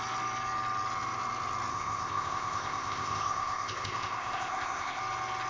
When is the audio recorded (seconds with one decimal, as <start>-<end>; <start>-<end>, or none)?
0.0-1.7; 5.0-5.5